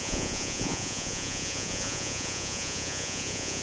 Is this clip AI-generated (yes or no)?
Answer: yes